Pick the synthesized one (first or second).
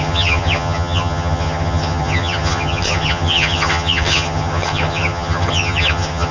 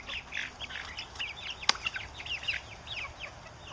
first